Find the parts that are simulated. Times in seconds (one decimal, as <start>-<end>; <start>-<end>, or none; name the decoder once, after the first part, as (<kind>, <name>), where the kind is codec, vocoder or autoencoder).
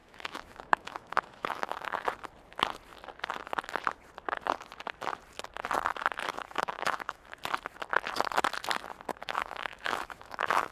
0.0-2.1 (autoencoder, DAC-VAE); 6.3-7.3; 9.1-10.7